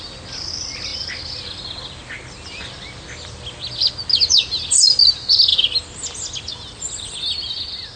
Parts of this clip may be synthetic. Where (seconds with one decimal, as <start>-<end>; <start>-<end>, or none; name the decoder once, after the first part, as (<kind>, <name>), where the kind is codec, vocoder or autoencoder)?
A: none